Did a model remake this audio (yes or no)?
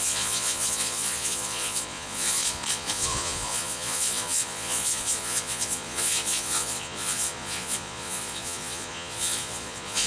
yes